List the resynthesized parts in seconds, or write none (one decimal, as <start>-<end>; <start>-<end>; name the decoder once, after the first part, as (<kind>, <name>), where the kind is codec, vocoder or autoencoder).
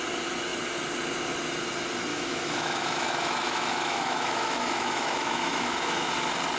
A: 2.1-6.1 (autoencoder, DAC-VAE)